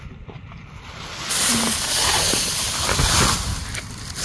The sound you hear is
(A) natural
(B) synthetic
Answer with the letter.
A